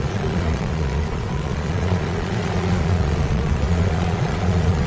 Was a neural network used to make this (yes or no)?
yes